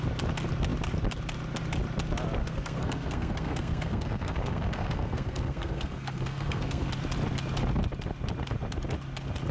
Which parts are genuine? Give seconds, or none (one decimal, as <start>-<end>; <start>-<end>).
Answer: 0.0-2.4; 6.9-9.5